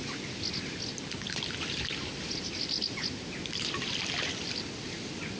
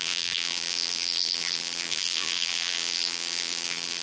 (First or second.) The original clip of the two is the first